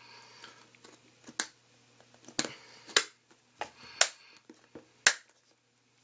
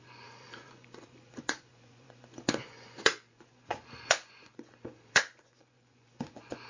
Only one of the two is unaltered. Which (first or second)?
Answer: first